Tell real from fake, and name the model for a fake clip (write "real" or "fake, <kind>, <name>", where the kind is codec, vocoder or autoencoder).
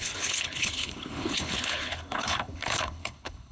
fake, codec, HILCodec